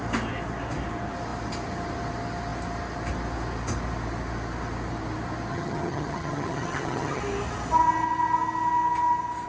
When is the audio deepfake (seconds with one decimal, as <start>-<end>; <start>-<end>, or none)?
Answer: 5.5-7.2